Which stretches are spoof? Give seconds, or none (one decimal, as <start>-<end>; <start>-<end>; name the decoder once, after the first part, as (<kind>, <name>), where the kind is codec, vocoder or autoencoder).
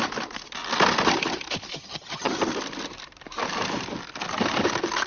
1.7-2.4 (vocoder, HiFi-GAN)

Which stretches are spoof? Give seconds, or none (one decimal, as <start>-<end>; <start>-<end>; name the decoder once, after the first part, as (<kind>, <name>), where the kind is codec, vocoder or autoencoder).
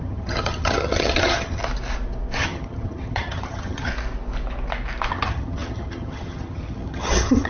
0.0-1.6 (vocoder, HiFi-GAN); 2.4-3.9; 5.1-7.5